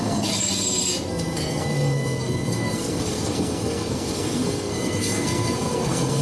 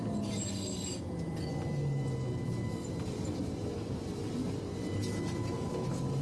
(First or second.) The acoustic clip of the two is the second